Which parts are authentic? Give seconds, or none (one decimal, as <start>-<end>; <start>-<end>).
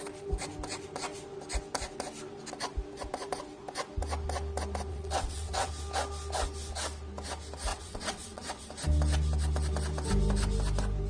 0.0-4.9; 5.7-7.7; 8.7-11.1